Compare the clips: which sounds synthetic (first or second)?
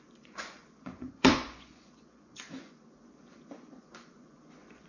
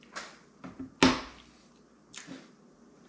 first